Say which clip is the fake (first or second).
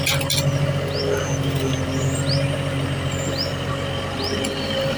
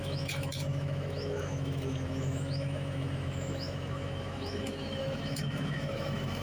second